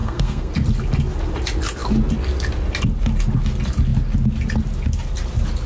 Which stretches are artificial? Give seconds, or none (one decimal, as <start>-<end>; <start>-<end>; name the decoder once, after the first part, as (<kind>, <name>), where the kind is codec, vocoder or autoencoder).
0.0-0.5 (codec, SNAC)